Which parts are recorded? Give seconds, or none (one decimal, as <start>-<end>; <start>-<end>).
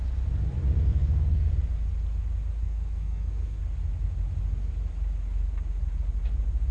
0.0-0.9; 1.5-2.6; 3.6-6.7